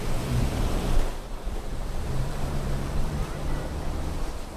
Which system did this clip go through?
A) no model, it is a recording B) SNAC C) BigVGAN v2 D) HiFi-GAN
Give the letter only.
C